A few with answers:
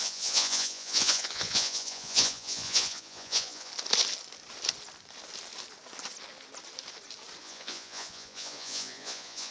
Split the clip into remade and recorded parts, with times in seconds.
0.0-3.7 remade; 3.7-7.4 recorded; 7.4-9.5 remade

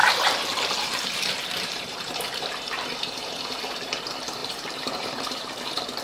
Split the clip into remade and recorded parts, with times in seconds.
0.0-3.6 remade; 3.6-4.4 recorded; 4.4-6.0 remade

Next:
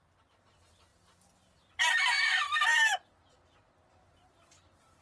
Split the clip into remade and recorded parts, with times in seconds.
0.0-5.0 recorded

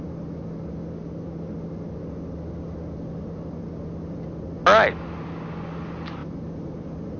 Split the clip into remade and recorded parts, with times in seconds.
0.0-6.2 recorded; 6.2-7.2 remade

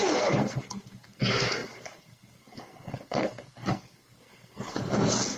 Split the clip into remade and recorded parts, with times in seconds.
0.0-5.4 remade